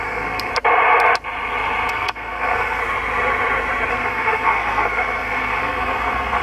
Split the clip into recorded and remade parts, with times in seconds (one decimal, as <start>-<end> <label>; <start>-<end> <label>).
0.0-0.5 remade; 0.5-1.9 recorded; 1.9-2.8 remade; 2.8-3.9 recorded; 3.9-6.4 remade